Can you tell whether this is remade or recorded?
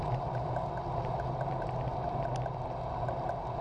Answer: recorded